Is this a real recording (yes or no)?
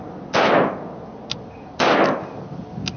yes